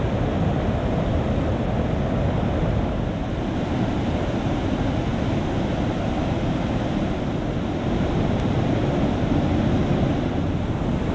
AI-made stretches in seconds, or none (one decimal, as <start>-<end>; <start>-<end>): none